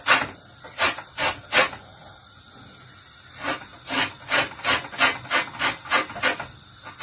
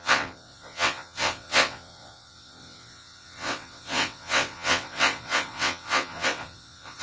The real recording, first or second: first